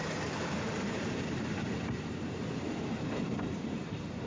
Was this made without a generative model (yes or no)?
no